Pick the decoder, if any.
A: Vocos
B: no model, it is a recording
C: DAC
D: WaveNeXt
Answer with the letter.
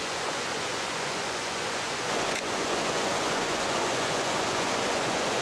A